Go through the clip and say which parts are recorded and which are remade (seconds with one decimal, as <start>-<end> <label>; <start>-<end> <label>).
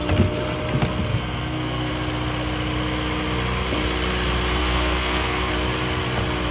0.0-1.1 recorded; 1.1-1.9 remade; 1.9-4.6 recorded; 4.6-5.5 remade; 5.5-6.5 recorded